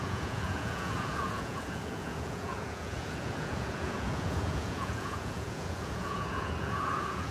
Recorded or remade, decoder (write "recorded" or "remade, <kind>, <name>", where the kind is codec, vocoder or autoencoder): remade, vocoder, Vocos